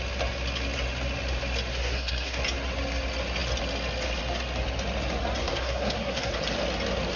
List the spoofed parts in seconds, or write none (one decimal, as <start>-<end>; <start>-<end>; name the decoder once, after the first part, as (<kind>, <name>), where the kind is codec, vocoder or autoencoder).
1.7-2.4 (codec, SNAC); 5.4-6.3